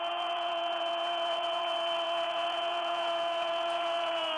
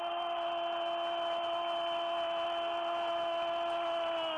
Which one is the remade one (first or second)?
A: first